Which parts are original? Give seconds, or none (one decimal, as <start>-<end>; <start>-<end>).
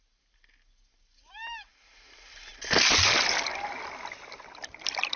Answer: 0.0-5.2